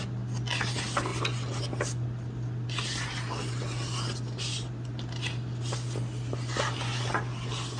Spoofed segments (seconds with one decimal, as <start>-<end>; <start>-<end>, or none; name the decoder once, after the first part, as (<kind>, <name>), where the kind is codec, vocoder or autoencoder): none